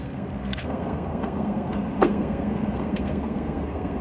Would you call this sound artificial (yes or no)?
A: yes